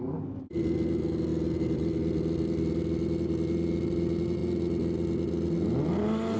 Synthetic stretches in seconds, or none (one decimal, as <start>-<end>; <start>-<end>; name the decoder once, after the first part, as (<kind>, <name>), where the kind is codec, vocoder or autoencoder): none